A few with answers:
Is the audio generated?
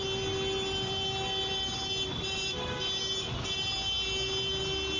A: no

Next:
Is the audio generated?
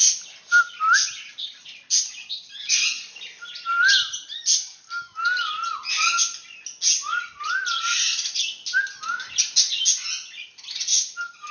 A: no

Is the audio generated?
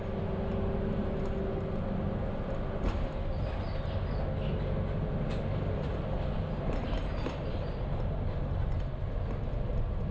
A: no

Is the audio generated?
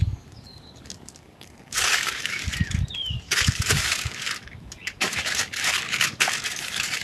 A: yes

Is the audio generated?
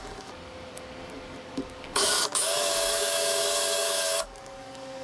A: yes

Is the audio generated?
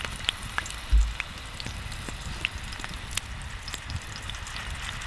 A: no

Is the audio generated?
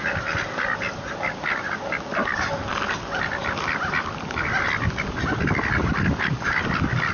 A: no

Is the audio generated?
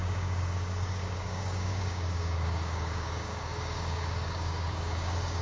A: yes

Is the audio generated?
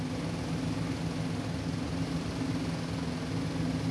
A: no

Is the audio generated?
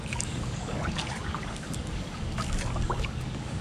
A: yes